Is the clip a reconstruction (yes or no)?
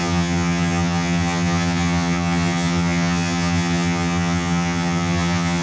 yes